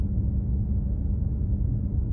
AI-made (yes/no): no